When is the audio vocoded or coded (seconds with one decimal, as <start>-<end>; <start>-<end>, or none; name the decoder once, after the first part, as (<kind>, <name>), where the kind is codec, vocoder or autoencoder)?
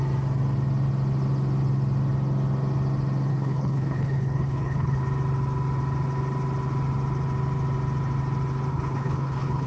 3.3-5.0 (codec, HILCodec); 8.7-9.7